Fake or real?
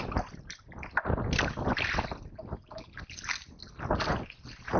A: real